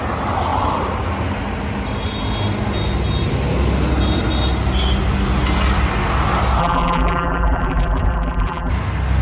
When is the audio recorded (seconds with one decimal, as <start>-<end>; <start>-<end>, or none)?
0.0-6.6; 8.7-9.2